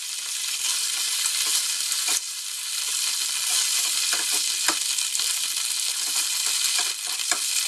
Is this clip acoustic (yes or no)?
yes